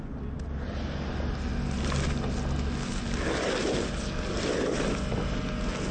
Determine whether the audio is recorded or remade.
recorded